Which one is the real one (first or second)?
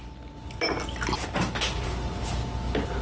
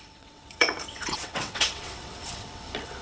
first